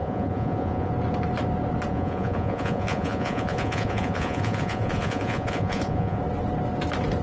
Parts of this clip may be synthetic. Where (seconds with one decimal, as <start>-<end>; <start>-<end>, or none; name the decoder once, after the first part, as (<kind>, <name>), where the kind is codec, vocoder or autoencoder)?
0.0-0.9 (vocoder, Vocos); 1.9-6.2